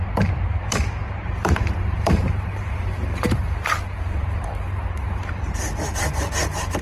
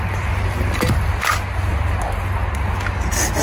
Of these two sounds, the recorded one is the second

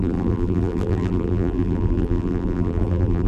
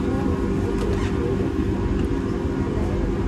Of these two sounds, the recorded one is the second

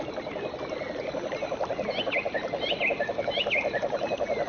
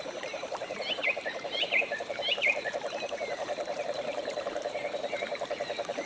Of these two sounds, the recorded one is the first